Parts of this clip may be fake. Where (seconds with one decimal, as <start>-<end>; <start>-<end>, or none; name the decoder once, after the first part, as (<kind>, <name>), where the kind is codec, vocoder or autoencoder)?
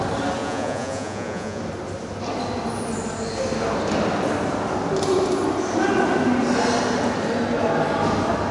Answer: 0.4-1.6 (vocoder, Vocos)